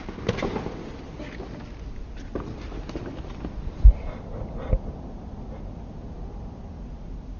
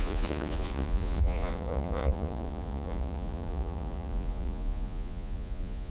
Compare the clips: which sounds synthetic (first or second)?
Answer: second